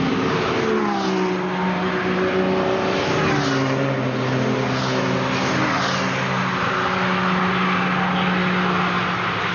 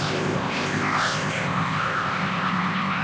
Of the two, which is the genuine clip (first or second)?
first